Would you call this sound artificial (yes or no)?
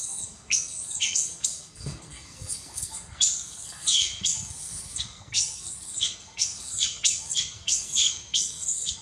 yes